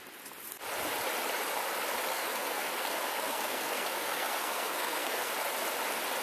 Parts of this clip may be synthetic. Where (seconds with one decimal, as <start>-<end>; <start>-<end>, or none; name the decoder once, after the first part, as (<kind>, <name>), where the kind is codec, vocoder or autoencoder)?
2.1-5.3 (codec, SNAC)